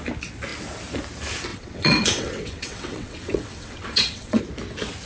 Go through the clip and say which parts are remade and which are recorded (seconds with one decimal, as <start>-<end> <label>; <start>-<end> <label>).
0.0-1.5 recorded; 1.5-4.4 remade; 4.4-5.1 recorded